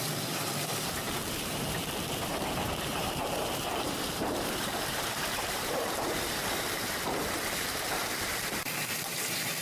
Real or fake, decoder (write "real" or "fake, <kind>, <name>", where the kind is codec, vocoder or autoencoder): fake, vocoder, BigVGAN v2